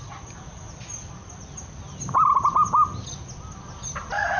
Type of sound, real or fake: real